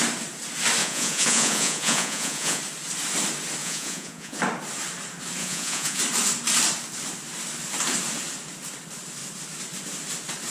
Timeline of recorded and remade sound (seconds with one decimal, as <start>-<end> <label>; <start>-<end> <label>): 0.0-0.8 recorded; 0.8-2.6 remade; 2.6-3.6 recorded; 3.6-4.4 remade; 4.4-5.4 recorded; 5.4-6.0 remade; 6.0-10.5 recorded